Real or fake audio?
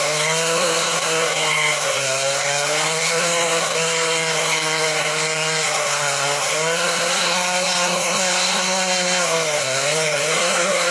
fake